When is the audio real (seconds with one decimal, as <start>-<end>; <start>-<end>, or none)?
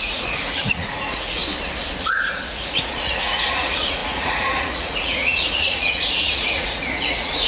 1.4-2.0